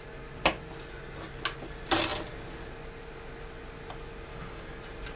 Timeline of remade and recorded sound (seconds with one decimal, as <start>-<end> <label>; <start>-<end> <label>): 0.0-4.3 recorded; 4.3-4.8 remade; 4.8-5.2 recorded